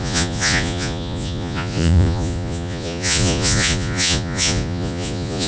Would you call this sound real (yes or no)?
no